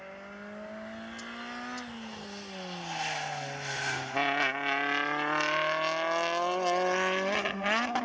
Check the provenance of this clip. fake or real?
real